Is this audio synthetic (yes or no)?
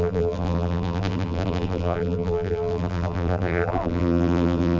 yes